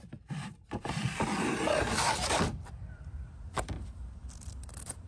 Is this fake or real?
fake